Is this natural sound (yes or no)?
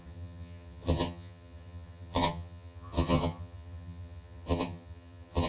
no